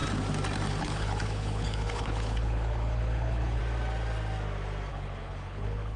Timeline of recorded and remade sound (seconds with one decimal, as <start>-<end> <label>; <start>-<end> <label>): 0.0-0.8 recorded; 0.8-3.6 remade; 3.6-4.9 recorded; 4.9-6.0 remade